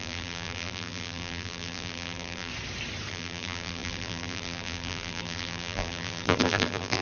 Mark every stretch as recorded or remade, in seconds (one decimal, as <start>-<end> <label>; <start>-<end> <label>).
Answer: 0.0-2.5 remade; 2.5-3.1 recorded; 3.1-7.0 remade